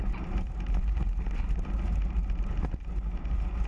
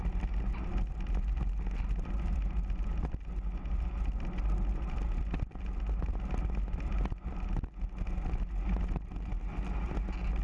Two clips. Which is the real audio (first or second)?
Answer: second